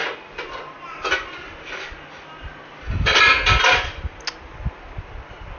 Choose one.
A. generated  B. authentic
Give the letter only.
B